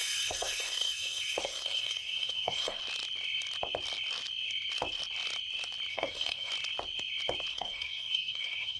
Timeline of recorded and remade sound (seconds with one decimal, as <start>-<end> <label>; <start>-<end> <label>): 0.0-2.8 remade; 2.8-5.9 recorded; 5.9-6.5 remade; 6.5-7.5 recorded; 7.5-8.8 remade